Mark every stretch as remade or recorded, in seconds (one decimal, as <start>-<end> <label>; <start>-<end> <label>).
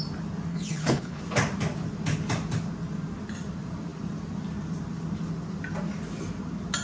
0.0-0.5 recorded; 0.5-1.2 remade; 1.2-6.8 recorded